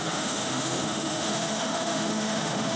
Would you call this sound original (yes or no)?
no